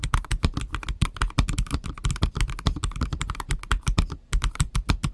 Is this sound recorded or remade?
remade